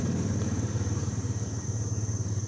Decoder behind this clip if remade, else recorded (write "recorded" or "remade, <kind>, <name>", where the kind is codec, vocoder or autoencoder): remade, vocoder, BigVGAN v2